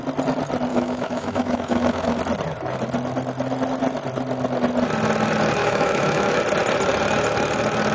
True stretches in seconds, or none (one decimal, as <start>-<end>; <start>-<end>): 0.0-0.7; 2.2-5.6; 6.4-7.9